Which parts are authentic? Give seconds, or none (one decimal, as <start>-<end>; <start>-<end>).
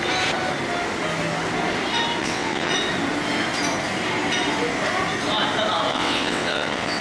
0.0-2.2; 2.7-5.9